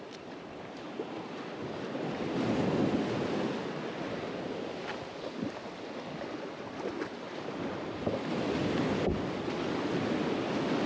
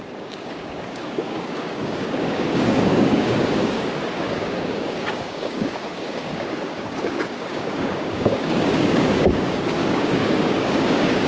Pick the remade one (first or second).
second